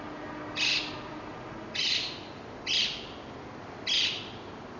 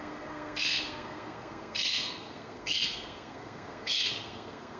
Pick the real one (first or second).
first